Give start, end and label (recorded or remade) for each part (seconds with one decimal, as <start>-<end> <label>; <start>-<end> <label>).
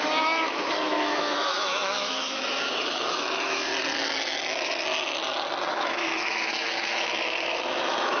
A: 0.0-3.7 remade; 3.7-5.7 recorded; 5.7-8.2 remade